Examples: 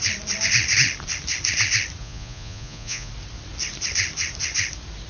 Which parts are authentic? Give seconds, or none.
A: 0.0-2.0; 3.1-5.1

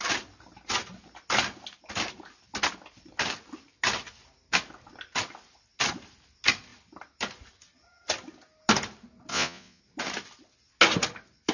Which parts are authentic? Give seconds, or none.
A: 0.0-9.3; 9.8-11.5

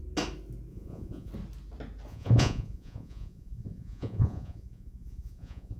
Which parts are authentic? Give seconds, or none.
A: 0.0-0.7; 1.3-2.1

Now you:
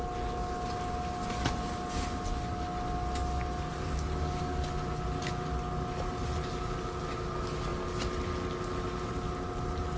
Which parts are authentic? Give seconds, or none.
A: 0.0-10.0

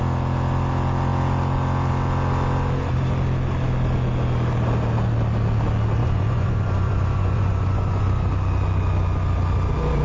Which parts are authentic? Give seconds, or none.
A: 0.0-6.0; 8.3-10.0

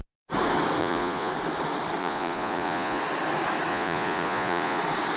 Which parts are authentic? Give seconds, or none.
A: 0.0-0.8; 1.3-2.0; 3.0-3.7; 4.8-5.2

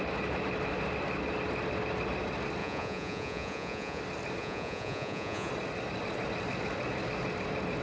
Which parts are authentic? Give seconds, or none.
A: 0.0-2.6; 4.0-4.4; 5.5-7.8

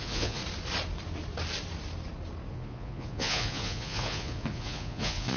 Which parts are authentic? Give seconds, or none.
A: 0.4-2.5